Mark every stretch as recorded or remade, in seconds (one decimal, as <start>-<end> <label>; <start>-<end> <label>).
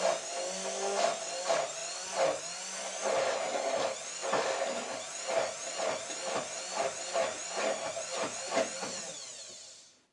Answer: 0.0-10.1 recorded